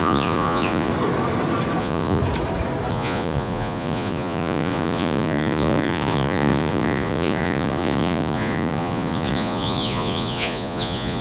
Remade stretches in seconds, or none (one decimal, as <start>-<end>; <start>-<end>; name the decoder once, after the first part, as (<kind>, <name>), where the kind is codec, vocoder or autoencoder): 0.0-0.9 (vocoder, Vocos); 1.8-2.2; 2.9-11.2